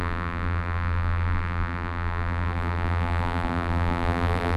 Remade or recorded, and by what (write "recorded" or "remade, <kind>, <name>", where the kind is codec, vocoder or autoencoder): remade, vocoder, BigVGAN v2